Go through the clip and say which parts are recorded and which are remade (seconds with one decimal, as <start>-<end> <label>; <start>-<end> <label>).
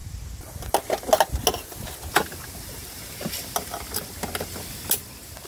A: 0.0-5.5 recorded